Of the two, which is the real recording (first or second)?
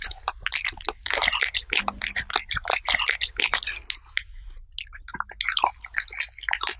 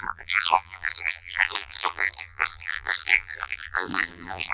first